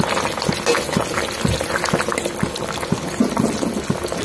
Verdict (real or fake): real